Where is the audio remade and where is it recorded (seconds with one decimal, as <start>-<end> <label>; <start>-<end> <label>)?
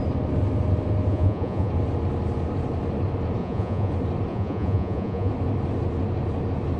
0.0-1.1 recorded; 1.1-1.7 remade; 1.7-3.4 recorded; 3.4-3.9 remade; 3.9-4.3 recorded; 4.3-5.3 remade; 5.3-6.8 recorded